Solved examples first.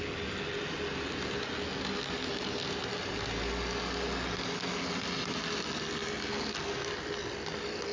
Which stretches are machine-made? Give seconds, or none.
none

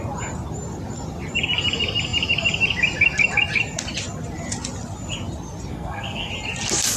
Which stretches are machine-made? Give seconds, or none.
5.7-6.3 (codec, SNAC)

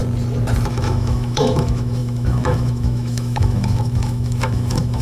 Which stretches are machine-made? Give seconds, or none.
0.7-5.0 (autoencoder, DAC-VAE)